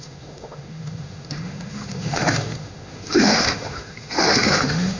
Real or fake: fake